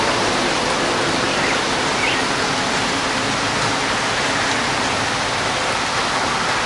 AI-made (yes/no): no